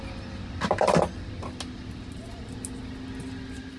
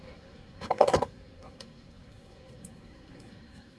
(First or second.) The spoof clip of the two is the second